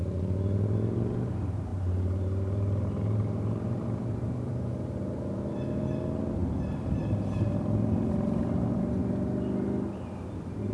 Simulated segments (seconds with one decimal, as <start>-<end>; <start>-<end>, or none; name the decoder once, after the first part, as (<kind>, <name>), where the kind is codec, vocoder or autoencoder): 1.7-5.8 (vocoder, BigVGAN v2)